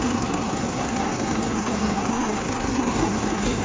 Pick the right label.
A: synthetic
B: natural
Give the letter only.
A